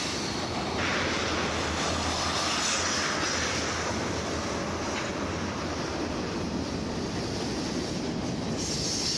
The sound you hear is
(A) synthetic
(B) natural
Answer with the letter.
B